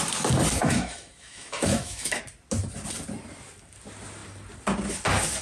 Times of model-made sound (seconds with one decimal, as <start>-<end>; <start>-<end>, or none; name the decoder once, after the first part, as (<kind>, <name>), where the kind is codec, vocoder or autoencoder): 0.6-2.2 (autoencoder, DAC-VAE)